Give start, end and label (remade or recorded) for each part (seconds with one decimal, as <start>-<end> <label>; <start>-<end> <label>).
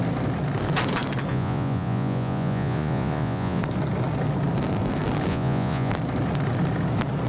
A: 0.0-1.3 recorded; 1.3-3.6 remade; 3.6-5.3 recorded; 5.3-5.9 remade; 5.9-7.3 recorded